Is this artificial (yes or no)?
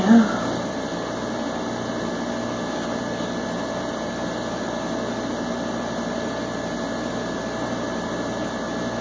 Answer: no